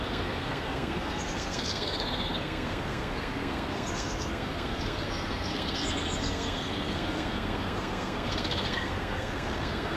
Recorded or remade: remade